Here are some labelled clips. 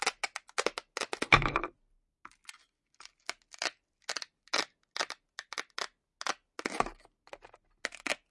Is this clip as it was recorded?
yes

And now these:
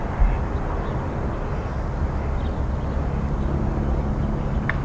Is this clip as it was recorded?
yes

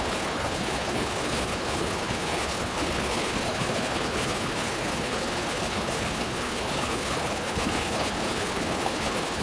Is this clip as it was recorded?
no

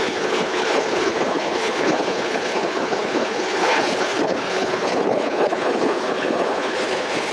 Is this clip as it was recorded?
no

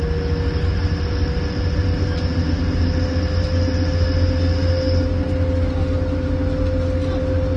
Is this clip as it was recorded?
yes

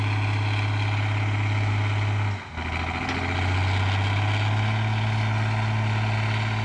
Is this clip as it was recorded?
yes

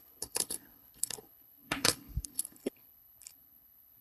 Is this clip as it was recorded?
no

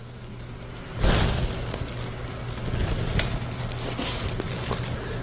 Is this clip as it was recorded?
yes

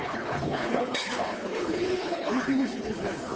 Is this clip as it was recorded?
no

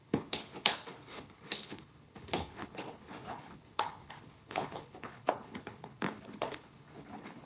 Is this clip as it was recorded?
no